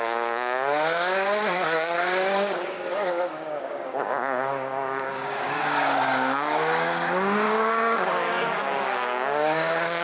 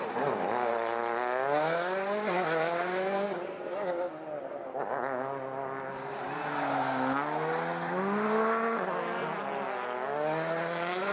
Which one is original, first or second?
second